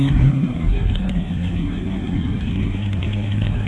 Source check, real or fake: fake